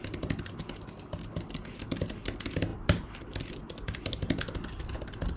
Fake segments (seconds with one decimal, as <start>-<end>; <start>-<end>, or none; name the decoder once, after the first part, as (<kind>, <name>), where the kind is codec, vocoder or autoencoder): none